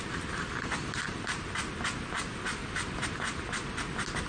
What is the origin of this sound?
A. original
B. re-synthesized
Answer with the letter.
A